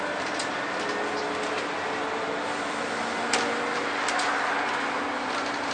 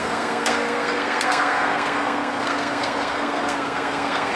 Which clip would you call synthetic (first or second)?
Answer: second